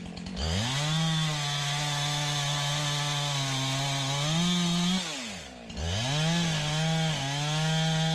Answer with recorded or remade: recorded